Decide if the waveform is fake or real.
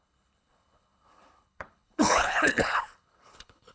fake